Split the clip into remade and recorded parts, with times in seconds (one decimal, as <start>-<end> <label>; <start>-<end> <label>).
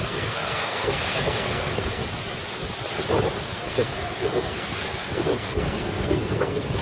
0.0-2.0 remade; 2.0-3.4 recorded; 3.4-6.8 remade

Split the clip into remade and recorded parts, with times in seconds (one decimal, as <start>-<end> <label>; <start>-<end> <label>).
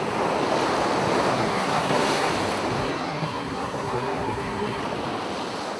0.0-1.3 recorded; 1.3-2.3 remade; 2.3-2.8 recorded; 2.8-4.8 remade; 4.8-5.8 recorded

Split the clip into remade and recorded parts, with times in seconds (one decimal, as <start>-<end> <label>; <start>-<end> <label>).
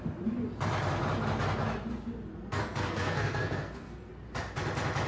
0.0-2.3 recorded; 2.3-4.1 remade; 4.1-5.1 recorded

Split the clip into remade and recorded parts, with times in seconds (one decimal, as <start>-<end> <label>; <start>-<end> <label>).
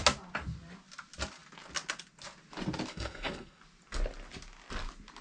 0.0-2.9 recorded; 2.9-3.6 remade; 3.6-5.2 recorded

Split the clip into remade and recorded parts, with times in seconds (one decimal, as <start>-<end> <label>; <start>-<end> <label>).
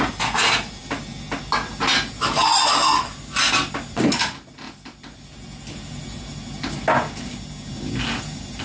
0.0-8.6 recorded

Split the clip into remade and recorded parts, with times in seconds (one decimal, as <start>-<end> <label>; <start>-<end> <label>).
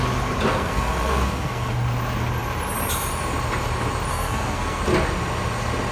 0.0-0.5 recorded; 0.5-1.7 remade; 1.7-4.1 recorded; 4.1-4.8 remade; 4.8-5.9 recorded